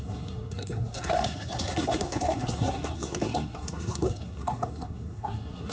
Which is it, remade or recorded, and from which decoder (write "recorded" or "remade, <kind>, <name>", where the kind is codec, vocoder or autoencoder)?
remade, codec, SNAC